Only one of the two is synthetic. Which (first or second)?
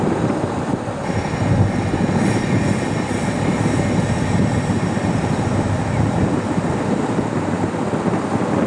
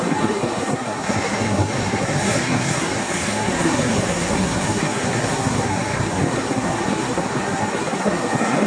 second